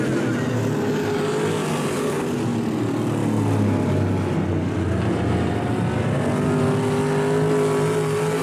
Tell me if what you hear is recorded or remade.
recorded